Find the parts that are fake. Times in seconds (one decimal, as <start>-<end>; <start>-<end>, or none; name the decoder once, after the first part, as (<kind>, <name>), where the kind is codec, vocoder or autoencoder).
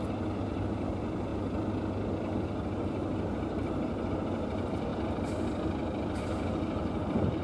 none